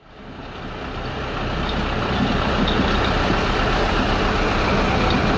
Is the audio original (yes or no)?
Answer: yes